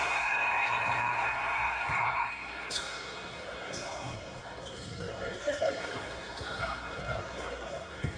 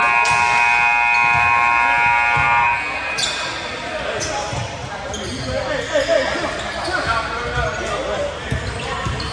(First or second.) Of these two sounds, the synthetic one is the first